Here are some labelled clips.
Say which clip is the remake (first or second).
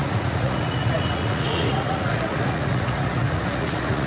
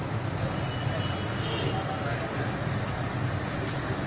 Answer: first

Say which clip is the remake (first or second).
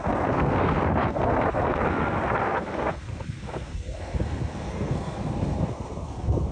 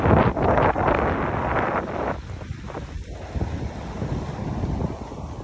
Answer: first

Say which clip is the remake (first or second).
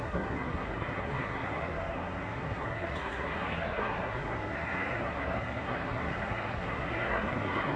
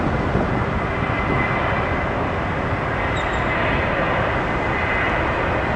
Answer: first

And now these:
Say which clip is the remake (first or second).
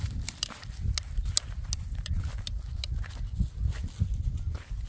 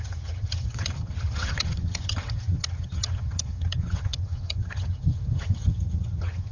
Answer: second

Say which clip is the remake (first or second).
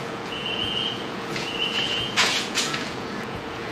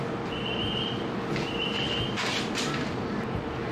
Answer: first